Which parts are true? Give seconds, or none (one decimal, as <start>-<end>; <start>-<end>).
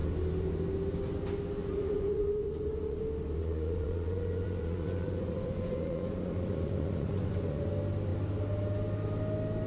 0.0-1.6; 3.0-3.4; 7.7-9.7